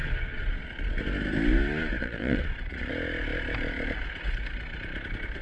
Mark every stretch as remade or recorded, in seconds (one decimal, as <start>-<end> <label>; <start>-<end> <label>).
0.0-1.0 remade; 1.0-2.0 recorded; 2.0-2.9 remade; 2.9-5.4 recorded